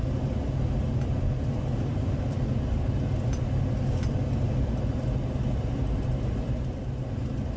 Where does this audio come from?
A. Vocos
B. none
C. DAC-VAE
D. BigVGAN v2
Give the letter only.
B